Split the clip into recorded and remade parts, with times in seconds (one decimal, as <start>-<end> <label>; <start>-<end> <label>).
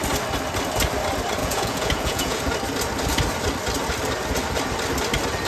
0.0-1.4 recorded; 1.4-2.5 remade; 2.5-5.5 recorded